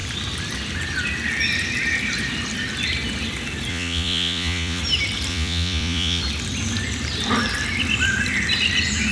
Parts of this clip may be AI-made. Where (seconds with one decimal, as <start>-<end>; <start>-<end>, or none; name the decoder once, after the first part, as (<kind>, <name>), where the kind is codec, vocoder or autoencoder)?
3.7-4.8 (vocoder, Vocos); 5.3-6.2